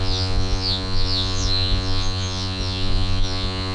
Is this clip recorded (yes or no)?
no